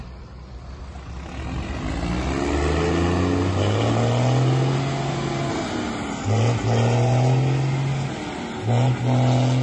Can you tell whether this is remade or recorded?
recorded